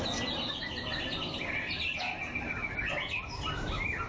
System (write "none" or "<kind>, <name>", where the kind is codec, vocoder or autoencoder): none